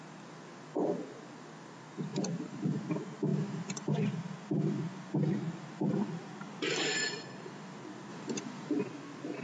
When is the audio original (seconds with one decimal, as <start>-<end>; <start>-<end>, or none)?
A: 0.0-2.1; 2.8-3.3; 3.9-8.1; 8.7-9.4